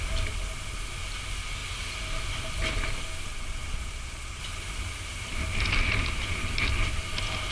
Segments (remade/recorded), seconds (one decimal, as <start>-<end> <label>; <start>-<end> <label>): 0.0-3.3 recorded; 3.3-4.4 remade; 4.4-7.5 recorded